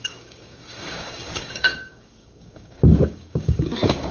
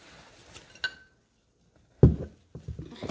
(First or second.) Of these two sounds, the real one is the second